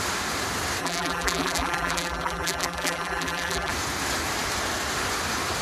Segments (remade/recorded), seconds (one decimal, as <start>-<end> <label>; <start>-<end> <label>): 0.0-0.8 recorded; 0.8-3.7 remade; 3.7-5.6 recorded